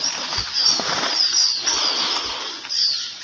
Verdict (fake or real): real